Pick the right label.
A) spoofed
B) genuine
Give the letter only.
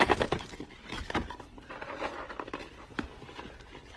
B